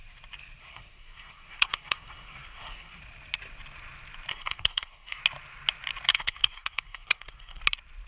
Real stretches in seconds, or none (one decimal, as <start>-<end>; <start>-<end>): 0.0-0.6; 3.0-4.3; 5.2-6.1; 7.6-8.1